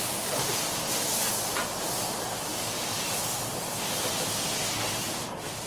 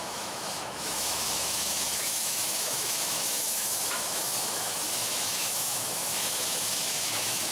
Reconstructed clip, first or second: second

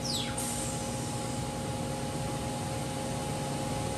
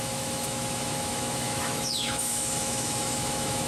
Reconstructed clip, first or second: second